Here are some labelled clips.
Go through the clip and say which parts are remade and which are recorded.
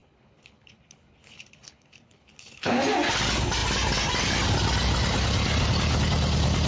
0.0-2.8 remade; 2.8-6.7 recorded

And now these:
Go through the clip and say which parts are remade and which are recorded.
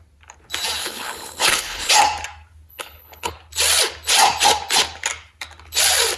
0.0-0.8 recorded; 0.8-1.9 remade; 1.9-2.7 recorded; 2.7-3.3 remade; 3.3-6.2 recorded